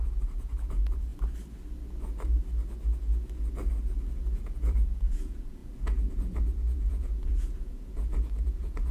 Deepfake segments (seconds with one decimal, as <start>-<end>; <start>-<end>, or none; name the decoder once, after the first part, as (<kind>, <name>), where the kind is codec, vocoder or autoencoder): 0.0-1.1 (vocoder, Vocos); 4.4-8.9

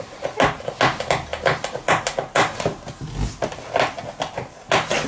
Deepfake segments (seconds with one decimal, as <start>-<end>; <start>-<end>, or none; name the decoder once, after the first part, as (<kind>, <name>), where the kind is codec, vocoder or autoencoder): none